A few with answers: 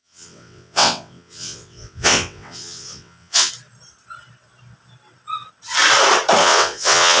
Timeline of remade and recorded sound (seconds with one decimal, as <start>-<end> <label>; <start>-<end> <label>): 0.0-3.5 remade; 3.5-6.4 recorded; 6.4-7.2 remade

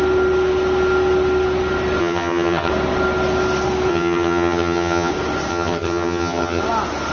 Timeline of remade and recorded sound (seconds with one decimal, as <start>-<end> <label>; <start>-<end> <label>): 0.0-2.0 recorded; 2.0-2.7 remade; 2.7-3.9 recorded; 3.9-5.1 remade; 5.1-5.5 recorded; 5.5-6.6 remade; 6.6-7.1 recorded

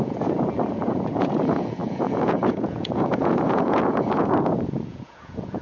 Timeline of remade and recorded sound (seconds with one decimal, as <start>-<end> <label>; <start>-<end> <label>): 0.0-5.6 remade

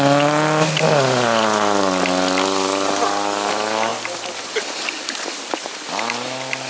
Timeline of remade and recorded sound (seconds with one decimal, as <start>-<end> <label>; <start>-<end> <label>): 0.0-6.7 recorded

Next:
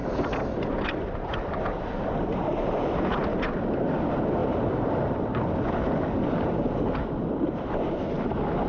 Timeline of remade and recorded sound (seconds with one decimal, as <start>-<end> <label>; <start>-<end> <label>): 0.0-1.3 recorded; 1.3-2.9 remade; 2.9-4.4 recorded; 4.4-7.9 remade; 7.9-8.7 recorded